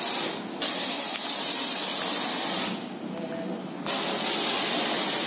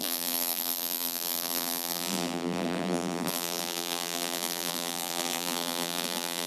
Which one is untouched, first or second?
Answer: first